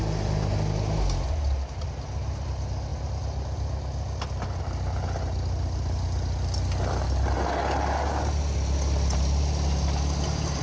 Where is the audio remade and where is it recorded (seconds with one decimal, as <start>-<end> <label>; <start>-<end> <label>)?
0.0-10.6 recorded